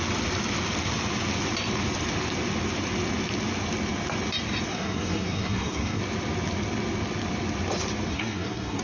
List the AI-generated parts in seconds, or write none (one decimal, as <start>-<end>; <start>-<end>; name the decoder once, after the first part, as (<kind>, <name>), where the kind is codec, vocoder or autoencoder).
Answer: 4.7-6.0 (codec, SNAC); 8.1-8.8